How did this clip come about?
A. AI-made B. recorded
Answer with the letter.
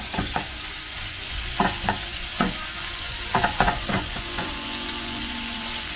A